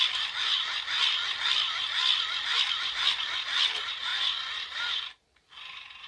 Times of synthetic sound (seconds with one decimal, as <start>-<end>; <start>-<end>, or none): none